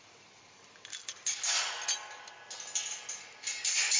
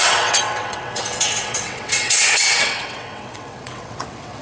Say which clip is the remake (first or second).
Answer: second